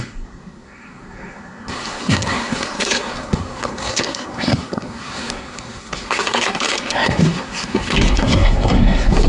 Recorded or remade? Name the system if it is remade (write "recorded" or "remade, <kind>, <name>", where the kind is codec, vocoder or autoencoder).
remade, codec, SNAC